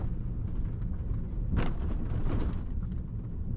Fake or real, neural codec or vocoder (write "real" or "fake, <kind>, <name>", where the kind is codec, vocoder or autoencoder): real